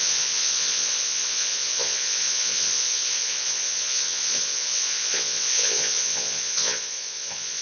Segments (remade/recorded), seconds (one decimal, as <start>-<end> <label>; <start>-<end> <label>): 0.0-7.6 remade